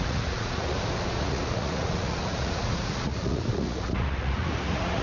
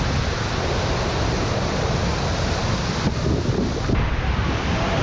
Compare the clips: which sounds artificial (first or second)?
first